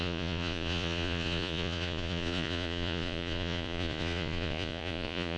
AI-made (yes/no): yes